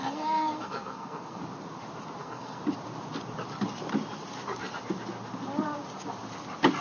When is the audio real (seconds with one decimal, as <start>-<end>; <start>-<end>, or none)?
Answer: 1.4-2.2; 2.6-6.8